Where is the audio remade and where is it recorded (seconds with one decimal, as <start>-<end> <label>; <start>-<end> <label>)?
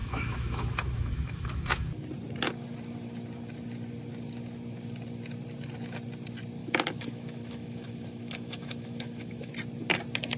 0.0-2.1 remade; 2.1-6.6 recorded; 6.6-9.5 remade; 9.5-10.4 recorded